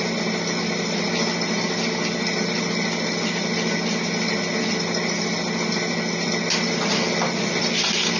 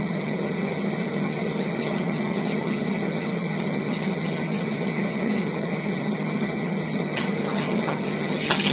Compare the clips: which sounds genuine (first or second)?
first